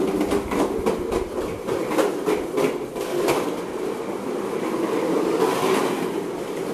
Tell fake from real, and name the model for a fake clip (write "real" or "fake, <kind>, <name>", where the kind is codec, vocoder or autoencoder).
real